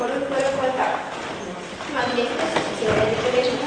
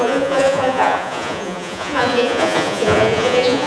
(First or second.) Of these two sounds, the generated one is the second